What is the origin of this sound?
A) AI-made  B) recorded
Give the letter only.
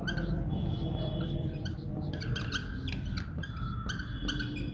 B